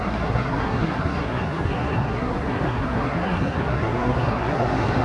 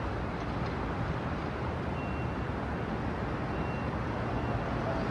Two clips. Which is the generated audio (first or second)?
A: first